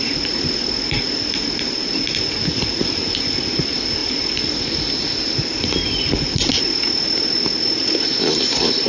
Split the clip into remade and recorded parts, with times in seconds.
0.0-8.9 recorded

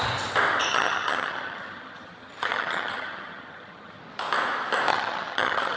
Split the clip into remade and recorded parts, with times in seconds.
0.0-0.7 recorded; 0.7-4.0 remade; 4.0-4.9 recorded; 4.9-5.8 remade

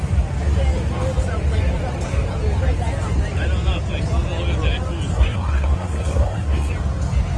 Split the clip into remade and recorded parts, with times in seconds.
0.0-5.1 recorded; 5.1-6.7 remade; 6.7-7.4 recorded

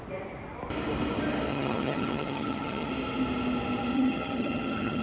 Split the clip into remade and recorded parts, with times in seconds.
0.0-1.5 recorded; 1.5-2.9 remade; 2.9-3.9 recorded; 3.9-5.0 remade